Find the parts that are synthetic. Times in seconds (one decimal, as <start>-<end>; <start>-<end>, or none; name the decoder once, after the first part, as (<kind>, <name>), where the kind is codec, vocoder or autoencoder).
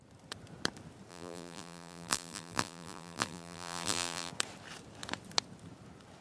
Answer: 1.1-4.3 (vocoder, BigVGAN v2)